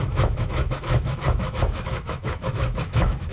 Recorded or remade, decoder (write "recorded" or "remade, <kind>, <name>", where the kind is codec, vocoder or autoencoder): remade, autoencoder, DAC-VAE